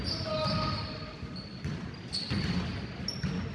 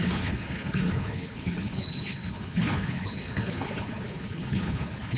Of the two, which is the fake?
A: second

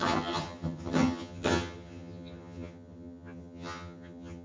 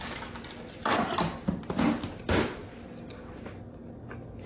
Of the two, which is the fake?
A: first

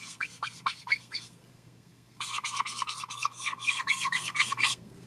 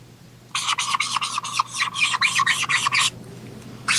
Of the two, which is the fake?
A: first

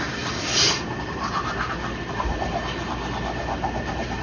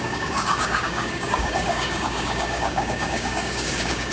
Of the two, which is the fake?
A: second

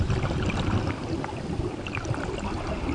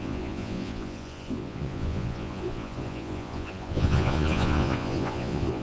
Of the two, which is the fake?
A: second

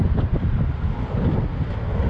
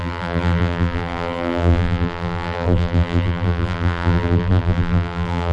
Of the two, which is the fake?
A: second